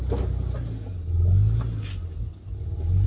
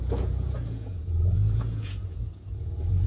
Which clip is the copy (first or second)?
second